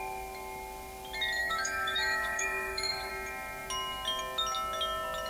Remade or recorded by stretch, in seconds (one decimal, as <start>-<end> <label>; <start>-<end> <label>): 0.0-1.4 recorded; 1.4-3.1 remade; 3.1-5.3 recorded